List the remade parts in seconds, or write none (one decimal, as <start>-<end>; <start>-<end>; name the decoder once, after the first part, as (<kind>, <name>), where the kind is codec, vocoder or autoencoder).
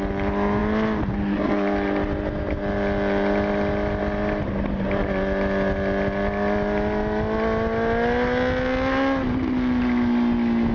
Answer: none